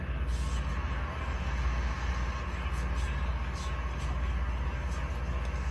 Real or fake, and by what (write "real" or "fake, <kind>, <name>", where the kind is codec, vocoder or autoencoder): real